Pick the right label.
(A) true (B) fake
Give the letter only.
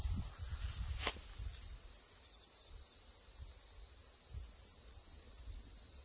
A